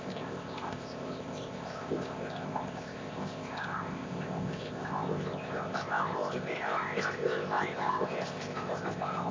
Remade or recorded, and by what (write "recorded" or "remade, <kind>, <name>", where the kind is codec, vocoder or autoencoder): remade, codec, ZipCodec